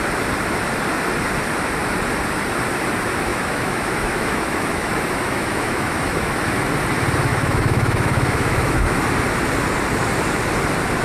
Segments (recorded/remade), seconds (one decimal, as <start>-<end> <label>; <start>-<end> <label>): 0.0-3.3 recorded; 3.3-6.3 remade; 6.3-7.3 recorded; 7.3-9.0 remade; 9.0-11.0 recorded

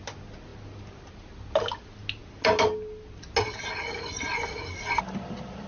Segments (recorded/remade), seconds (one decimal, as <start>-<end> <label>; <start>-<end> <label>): 0.0-5.7 recorded

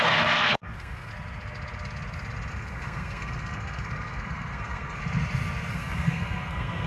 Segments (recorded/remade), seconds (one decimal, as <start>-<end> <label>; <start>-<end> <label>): 0.0-1.1 remade; 1.1-2.5 recorded; 2.5-5.0 remade; 5.0-5.7 recorded; 5.7-6.9 remade

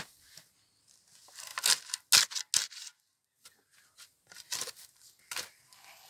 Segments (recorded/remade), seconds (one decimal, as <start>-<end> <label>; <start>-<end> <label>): 0.0-6.1 recorded

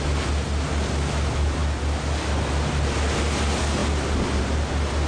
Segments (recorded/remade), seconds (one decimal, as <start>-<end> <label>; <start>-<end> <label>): 0.0-5.1 recorded

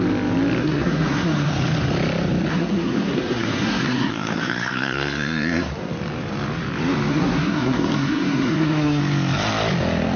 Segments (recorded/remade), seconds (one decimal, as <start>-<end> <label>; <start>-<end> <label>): 0.0-0.6 recorded; 0.6-1.5 remade; 1.5-2.5 recorded; 2.5-5.9 remade; 5.9-7.1 recorded; 7.1-9.0 remade; 9.0-10.2 recorded

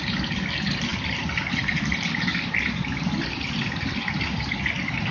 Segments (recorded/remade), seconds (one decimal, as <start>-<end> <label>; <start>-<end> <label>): 0.0-5.1 recorded